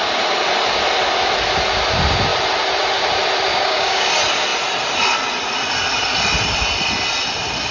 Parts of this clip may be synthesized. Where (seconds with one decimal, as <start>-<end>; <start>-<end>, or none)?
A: 3.5-4.1